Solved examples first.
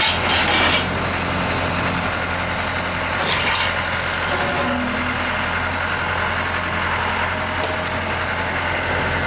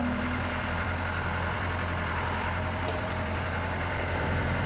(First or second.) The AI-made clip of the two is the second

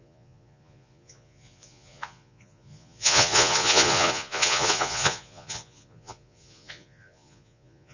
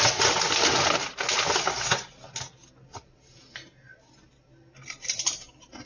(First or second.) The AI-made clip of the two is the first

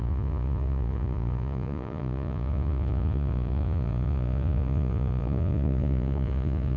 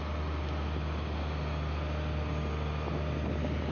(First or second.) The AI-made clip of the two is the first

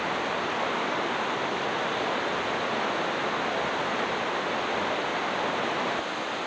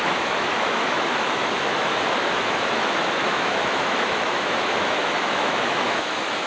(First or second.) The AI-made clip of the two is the second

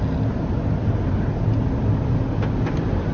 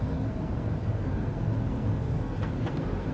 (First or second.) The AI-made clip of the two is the second